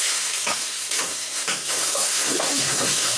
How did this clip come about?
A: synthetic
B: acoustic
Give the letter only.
A